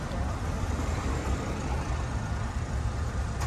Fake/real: fake